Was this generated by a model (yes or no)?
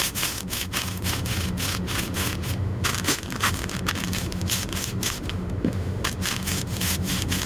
yes